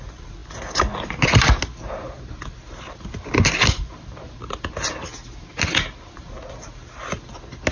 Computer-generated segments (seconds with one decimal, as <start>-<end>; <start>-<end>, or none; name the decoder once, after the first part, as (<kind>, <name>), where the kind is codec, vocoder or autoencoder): none